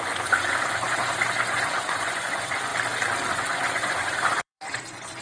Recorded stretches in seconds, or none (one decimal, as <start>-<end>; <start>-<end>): 2.7-3.3